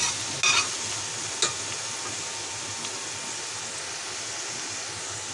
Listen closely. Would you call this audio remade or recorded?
recorded